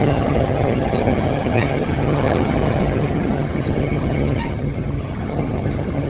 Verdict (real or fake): fake